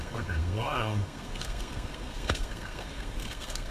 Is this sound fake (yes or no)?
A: yes